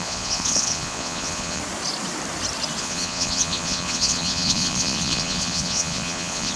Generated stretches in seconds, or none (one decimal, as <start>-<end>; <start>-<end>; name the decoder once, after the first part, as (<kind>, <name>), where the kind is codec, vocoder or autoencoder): 0.0-1.6 (vocoder, Vocos); 2.8-6.6